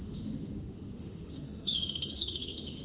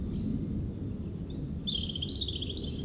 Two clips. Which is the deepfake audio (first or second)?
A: first